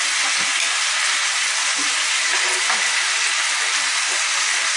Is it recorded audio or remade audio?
recorded